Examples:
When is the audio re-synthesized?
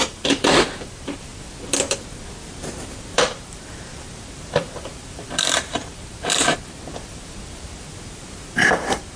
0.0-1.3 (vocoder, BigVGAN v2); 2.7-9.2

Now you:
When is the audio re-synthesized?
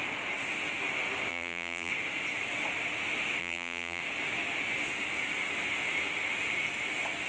1.3-1.9 (vocoder, BigVGAN v2); 3.4-4.0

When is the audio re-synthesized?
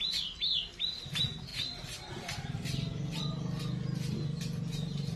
none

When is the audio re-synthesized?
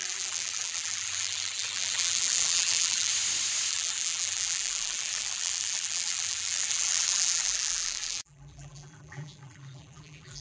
0.0-3.1 (vocoder, BigVGAN v2); 3.7-10.4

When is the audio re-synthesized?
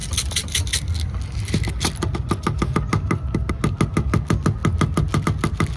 none